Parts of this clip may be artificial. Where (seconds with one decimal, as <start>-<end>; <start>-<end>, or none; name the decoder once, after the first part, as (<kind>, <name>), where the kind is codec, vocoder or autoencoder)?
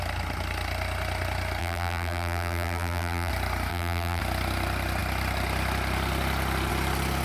1.6-3.3 (vocoder, BigVGAN v2); 3.7-4.2